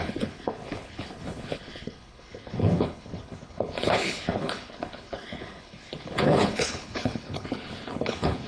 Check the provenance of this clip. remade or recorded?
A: remade